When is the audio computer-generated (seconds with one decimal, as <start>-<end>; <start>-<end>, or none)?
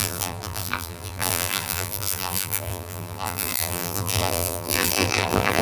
0.0-5.6